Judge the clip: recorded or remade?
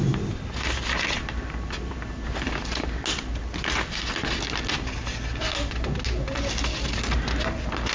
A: recorded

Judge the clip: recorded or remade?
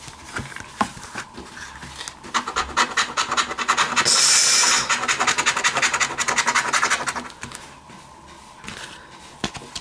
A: recorded